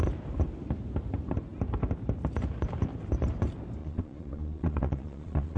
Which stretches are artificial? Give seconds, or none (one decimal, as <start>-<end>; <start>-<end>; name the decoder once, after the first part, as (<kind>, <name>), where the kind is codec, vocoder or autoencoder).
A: 3.8-5.6 (vocoder, Vocos)